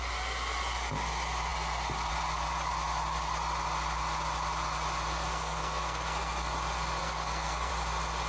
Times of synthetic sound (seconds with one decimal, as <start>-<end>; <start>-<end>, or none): 5.3-6.5; 7.0-7.7